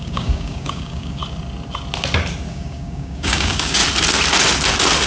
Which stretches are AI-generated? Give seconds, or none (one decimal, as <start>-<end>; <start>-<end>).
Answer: 0.0-1.2; 2.5-3.8